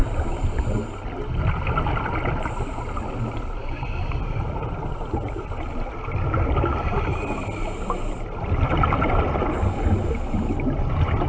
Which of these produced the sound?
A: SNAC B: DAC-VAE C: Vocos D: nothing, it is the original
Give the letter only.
D